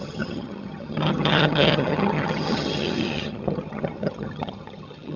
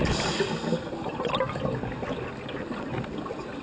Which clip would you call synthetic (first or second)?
first